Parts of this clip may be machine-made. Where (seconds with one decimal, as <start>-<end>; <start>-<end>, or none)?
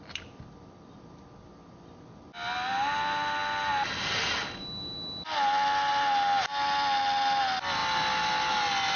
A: none